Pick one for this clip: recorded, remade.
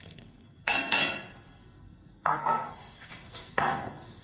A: remade